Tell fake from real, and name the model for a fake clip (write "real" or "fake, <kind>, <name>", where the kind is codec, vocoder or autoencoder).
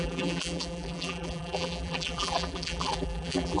fake, vocoder, BigVGAN v2